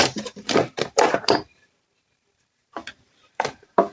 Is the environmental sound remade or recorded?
remade